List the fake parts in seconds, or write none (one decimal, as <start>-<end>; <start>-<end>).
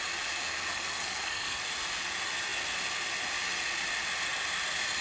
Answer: 0.7-1.6